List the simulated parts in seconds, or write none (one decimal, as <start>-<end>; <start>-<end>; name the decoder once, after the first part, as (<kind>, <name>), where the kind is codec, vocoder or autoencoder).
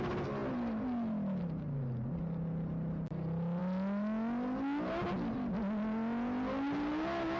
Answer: none